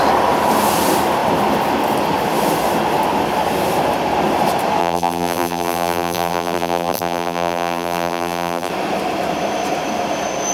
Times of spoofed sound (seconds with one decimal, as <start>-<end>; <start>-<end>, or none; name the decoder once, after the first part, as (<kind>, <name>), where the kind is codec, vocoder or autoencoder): 4.8-8.7 (vocoder, BigVGAN v2)

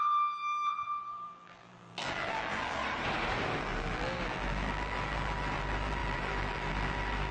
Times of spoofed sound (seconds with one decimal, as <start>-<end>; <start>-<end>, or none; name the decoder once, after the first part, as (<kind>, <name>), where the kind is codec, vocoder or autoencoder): 0.0-2.8 (vocoder, BigVGAN v2); 3.6-7.3

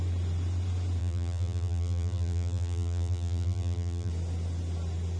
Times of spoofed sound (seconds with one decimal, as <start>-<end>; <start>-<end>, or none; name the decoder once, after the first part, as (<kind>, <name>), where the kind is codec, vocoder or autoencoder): 1.0-4.1 (vocoder, BigVGAN v2)

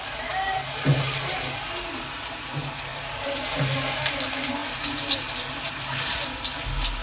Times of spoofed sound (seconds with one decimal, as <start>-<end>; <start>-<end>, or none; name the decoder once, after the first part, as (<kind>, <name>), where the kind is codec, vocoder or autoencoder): 2.9-3.5 (vocoder, BigVGAN v2); 4.6-5.7

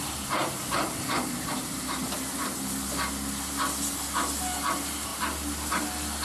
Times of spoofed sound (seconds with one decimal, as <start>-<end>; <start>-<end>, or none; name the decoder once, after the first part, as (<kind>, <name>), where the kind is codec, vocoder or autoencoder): 0.4-1.8 (vocoder, BigVGAN v2)

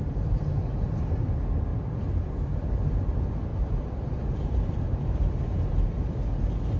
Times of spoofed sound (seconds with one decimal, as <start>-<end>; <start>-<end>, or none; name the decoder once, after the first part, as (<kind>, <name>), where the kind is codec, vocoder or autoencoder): 1.7-2.7 (vocoder, BigVGAN v2); 3.5-6.1